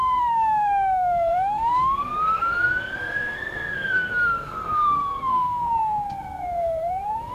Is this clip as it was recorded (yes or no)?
no